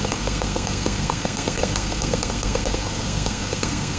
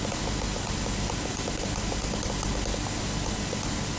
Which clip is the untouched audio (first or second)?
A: second